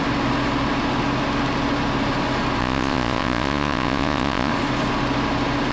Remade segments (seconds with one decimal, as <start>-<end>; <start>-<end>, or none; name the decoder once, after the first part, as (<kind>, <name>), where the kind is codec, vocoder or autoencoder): 2.6-4.5 (vocoder, Vocos)